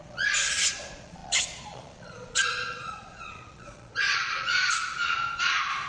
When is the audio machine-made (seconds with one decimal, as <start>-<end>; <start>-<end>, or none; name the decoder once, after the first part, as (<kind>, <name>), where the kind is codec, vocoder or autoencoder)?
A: 0.0-5.9 (vocoder, Vocos)